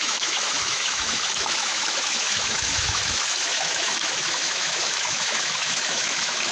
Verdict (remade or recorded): remade